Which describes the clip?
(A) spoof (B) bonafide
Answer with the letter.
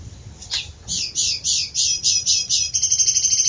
B